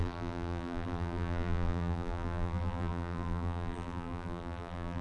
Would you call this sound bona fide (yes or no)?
no